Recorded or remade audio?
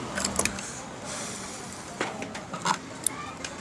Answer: recorded